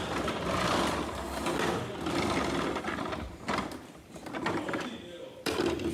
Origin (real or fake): real